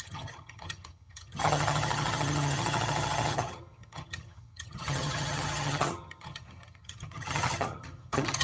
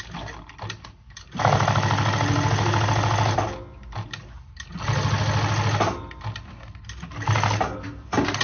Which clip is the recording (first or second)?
second